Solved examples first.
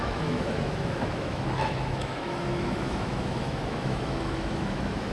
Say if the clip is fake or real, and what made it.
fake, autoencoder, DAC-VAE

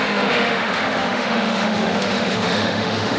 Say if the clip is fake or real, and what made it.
fake, autoencoder, DAC-VAE